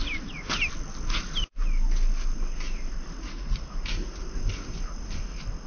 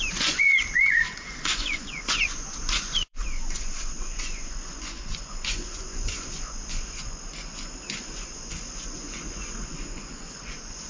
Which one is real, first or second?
first